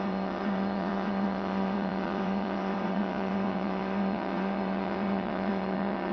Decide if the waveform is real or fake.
fake